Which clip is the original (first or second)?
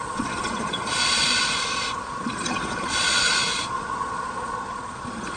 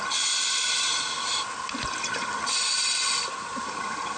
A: second